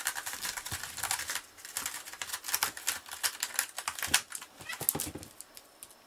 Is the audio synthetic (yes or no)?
no